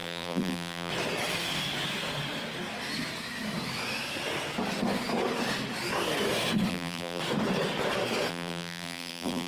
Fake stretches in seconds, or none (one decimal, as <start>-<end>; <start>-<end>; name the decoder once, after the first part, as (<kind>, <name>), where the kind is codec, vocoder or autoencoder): 0.0-0.9 (vocoder, BigVGAN v2); 6.7-7.2; 8.3-9.5